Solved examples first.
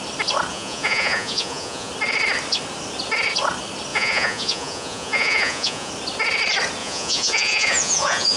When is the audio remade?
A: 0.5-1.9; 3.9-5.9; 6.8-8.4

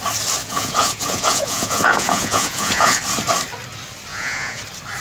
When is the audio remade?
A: 0.4-3.0; 4.1-4.6

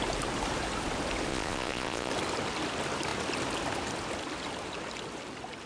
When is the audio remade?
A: 1.3-2.1